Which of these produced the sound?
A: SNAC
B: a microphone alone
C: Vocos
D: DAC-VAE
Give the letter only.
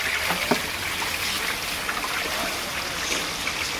B